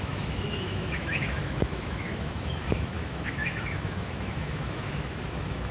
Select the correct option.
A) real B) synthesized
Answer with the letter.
B